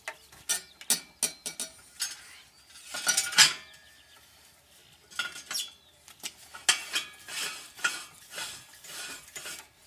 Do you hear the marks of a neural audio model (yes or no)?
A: no